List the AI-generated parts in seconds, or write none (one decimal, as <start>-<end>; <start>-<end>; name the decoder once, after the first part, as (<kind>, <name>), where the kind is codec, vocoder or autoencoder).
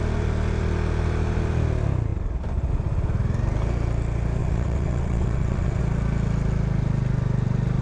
4.4-5.8 (vocoder, WaveNeXt)